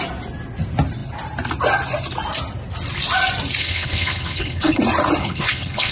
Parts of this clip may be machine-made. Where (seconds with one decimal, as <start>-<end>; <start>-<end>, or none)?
3.6-4.8; 5.2-5.9